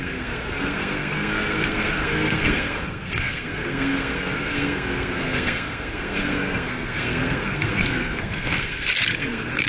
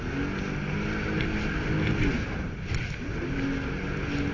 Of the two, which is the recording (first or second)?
second